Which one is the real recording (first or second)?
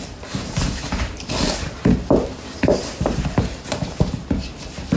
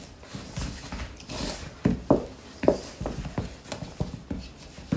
second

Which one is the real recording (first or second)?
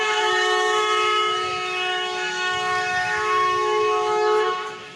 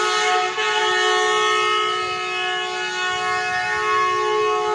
second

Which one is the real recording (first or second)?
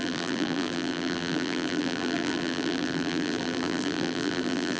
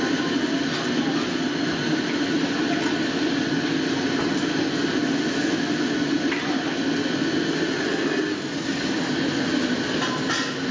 second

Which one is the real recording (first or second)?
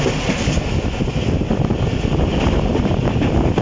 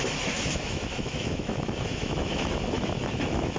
first